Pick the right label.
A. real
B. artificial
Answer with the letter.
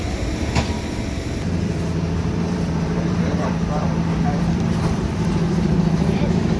B